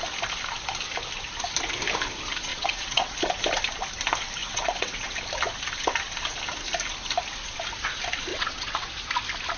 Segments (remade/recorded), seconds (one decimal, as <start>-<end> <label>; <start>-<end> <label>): 0.0-2.5 recorded; 2.5-3.2 remade; 3.2-4.4 recorded; 4.4-5.2 remade; 5.2-8.3 recorded; 8.3-8.9 remade; 8.9-9.6 recorded